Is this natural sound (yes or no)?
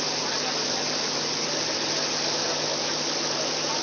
yes